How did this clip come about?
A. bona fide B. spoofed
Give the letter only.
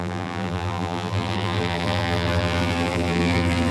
B